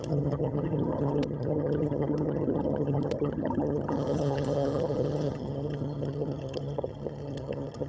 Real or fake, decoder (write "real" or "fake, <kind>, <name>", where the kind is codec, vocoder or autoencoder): fake, vocoder, HiFi-GAN